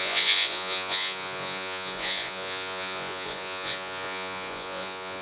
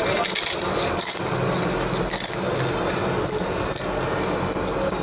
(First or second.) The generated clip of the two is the first